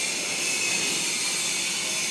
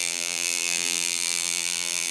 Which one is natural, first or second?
first